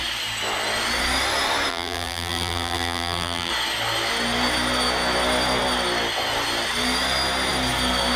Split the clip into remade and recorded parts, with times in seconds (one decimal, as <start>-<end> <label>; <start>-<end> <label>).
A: 0.0-1.7 recorded; 1.7-3.5 remade; 3.5-8.2 recorded